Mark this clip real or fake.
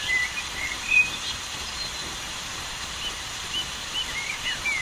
fake